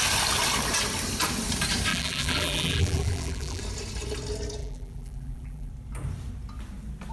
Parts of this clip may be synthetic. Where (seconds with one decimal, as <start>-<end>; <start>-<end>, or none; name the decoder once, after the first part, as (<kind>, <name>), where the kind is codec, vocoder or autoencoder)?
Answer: 1.9-3.6 (vocoder, BigVGAN v2); 4.6-5.7